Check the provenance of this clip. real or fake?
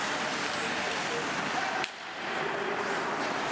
real